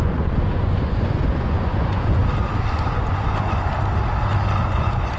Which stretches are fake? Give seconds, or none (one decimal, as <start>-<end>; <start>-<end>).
0.0-2.2; 2.7-3.7; 4.6-5.2